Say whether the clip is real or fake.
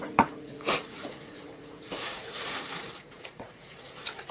fake